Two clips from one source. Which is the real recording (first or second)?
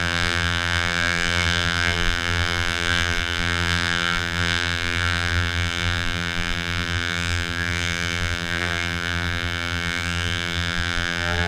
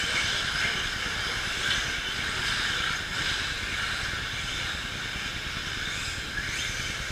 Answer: second